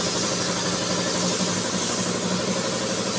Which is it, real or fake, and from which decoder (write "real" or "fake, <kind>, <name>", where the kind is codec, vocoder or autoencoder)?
real